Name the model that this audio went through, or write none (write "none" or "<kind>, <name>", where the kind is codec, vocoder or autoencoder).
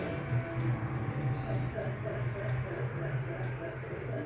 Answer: none